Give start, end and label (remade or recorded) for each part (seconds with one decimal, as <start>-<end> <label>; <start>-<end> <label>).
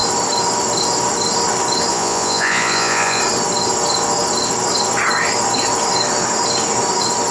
0.0-1.9 recorded; 1.9-3.2 remade; 3.2-7.3 recorded